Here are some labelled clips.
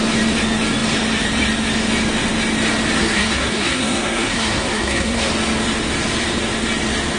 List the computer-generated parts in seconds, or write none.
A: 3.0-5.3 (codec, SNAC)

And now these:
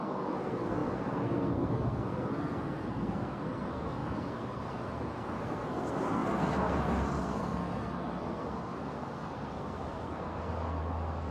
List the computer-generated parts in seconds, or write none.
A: 0.0-11.3 (codec, SNAC)

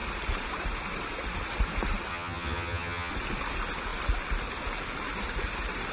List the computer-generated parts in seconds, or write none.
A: 2.1-3.1 (vocoder, HiFi-GAN)

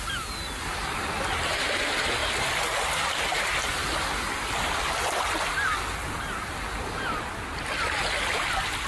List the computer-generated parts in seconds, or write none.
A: none

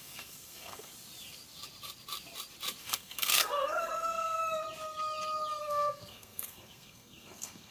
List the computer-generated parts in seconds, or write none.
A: 0.0-0.9 (codec, SNAC); 2.8-4.4; 5.6-7.7

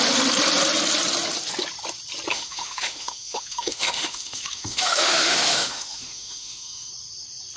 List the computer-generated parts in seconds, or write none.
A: 2.3-6.9 (autoencoder, DAC-VAE)

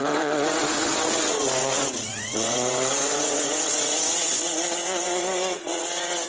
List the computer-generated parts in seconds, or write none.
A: 0.0-6.3 (vocoder, WaveNeXt)

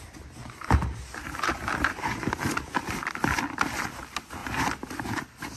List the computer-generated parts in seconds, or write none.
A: 0.4-3.1 (vocoder, BigVGAN v2)